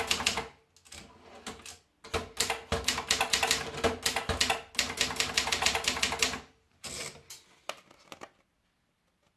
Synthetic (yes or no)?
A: no